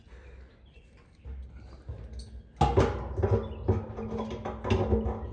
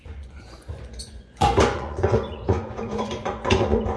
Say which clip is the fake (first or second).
second